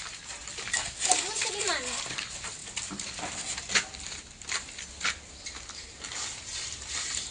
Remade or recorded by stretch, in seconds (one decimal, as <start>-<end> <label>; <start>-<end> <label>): 0.0-7.3 recorded